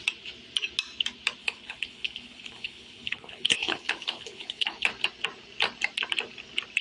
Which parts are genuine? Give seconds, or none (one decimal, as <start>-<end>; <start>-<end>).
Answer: 0.0-1.4; 4.9-6.8